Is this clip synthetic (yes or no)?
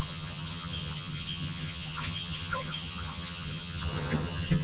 yes